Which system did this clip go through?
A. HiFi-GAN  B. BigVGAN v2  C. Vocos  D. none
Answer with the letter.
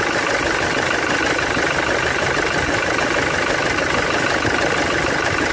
B